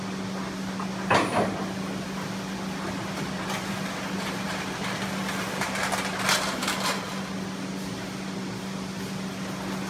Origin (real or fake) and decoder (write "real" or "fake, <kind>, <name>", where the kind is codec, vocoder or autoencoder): real